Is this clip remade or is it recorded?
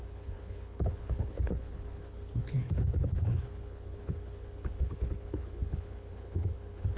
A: remade